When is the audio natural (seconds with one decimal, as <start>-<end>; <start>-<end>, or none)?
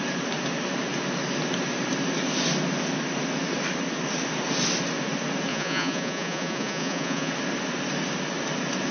0.0-5.5; 7.3-8.9